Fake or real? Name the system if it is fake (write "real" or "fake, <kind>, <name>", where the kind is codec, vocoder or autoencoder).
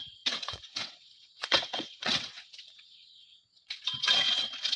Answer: fake, vocoder, WaveNeXt